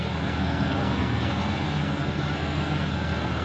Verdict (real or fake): fake